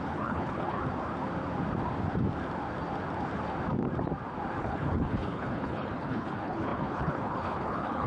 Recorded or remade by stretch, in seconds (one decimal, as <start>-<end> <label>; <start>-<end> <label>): 0.0-0.8 remade; 0.8-4.6 recorded; 4.6-8.1 remade